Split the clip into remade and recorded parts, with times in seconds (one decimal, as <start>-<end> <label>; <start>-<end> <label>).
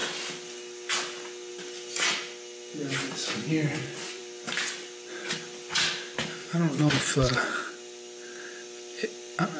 0.0-3.1 recorded; 3.1-4.2 remade; 4.2-6.4 recorded; 6.4-7.7 remade; 7.7-9.6 recorded